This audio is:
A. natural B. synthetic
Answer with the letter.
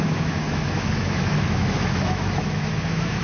B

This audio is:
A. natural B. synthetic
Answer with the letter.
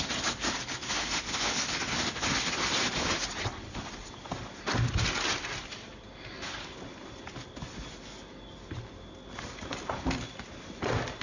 A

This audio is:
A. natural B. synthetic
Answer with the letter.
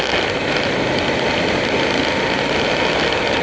A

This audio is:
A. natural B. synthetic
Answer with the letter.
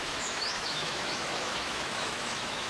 B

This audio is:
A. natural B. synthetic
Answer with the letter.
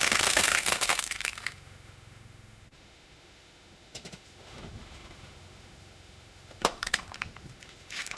B